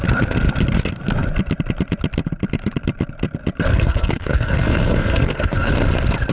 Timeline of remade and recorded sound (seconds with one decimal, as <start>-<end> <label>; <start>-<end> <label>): 0.0-3.7 recorded; 3.7-5.7 remade; 5.7-6.3 recorded